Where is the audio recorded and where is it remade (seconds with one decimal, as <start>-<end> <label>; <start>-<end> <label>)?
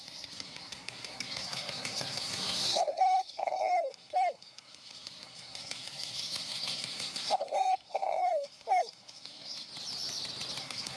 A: 0.0-9.7 remade; 9.7-10.6 recorded; 10.6-11.0 remade